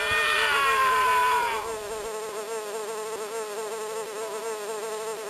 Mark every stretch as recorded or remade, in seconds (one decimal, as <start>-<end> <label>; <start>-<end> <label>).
0.0-5.3 recorded